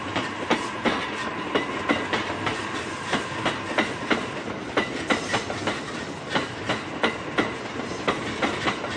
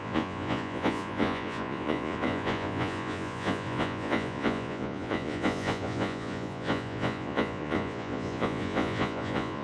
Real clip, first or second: first